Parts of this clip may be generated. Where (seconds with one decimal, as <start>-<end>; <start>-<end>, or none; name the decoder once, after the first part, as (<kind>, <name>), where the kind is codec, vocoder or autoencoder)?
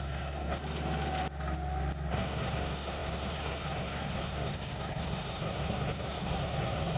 0.0-0.6 (codec, SNAC); 2.1-7.0